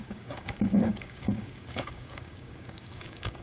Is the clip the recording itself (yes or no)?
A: no